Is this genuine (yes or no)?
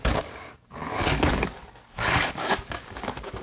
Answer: no